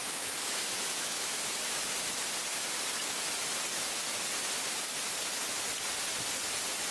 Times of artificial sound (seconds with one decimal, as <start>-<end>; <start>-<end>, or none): 0.0-1.8